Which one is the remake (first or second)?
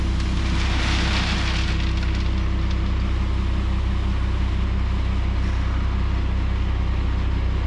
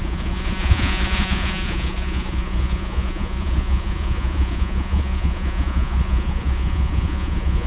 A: second